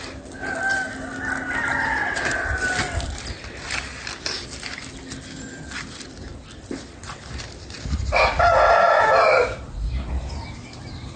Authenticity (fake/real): real